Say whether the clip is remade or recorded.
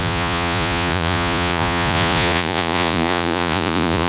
remade